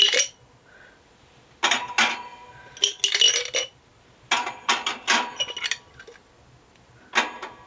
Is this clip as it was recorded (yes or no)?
yes